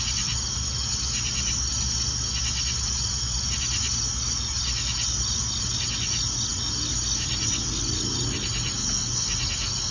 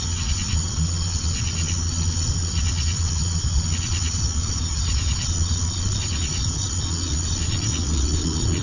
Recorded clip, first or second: first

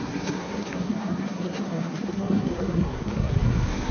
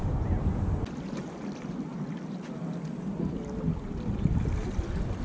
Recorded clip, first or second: second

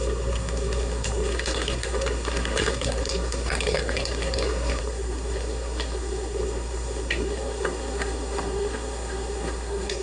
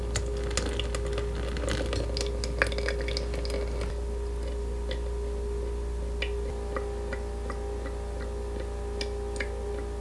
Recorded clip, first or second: second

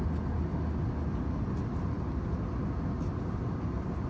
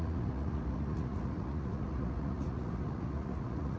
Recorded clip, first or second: first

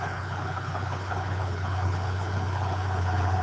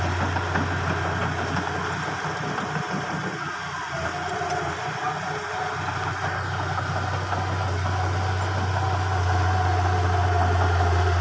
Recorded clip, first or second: second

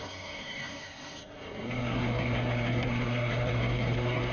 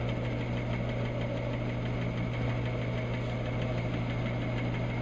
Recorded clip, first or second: second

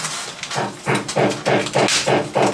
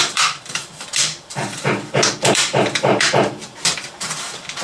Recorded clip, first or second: first